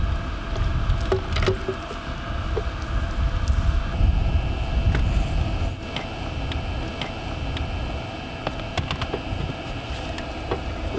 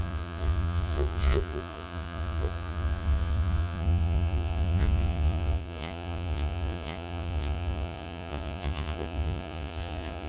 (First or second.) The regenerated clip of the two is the second